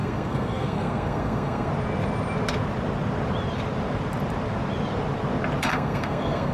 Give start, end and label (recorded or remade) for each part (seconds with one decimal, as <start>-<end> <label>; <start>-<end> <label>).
0.0-1.7 remade; 1.7-5.6 recorded; 5.6-6.5 remade